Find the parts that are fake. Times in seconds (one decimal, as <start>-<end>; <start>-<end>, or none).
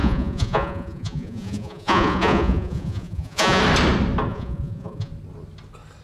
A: 0.0-3.6; 4.3-5.1